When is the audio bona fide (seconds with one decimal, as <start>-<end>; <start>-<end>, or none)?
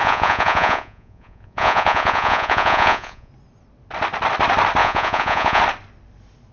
3.3-4.8; 5.6-6.5